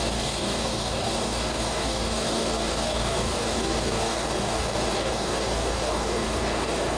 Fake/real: fake